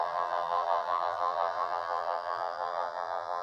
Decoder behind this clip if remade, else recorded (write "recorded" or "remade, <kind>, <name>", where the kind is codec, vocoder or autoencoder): remade, vocoder, BigVGAN v2